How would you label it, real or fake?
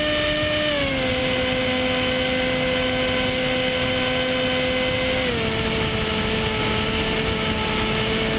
real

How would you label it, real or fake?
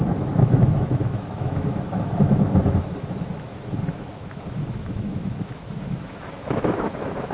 fake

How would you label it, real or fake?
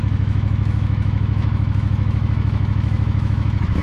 fake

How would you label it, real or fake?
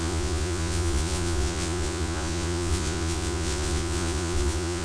fake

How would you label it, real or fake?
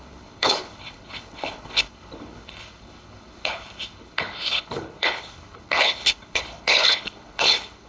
fake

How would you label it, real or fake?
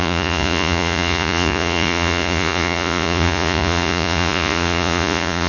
fake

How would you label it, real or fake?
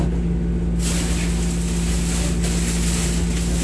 real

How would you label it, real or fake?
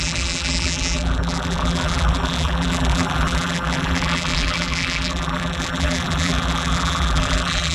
fake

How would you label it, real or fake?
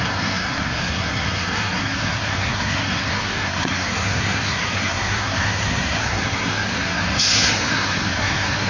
fake